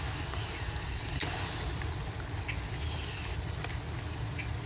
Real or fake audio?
real